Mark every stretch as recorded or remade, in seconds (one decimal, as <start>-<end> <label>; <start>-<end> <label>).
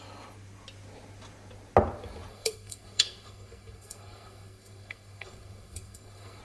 0.0-2.3 recorded; 2.3-6.4 remade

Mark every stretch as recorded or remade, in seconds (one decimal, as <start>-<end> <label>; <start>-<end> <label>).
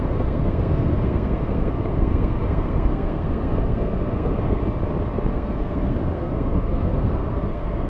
0.0-4.6 remade; 4.6-5.3 recorded; 5.3-7.9 remade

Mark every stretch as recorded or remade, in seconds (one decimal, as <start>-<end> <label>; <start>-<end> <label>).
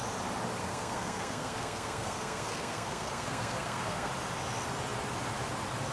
0.0-0.6 recorded; 0.6-4.1 remade; 4.1-5.9 recorded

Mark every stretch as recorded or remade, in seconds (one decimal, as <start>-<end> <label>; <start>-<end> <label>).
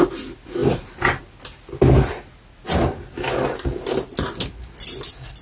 0.0-5.4 recorded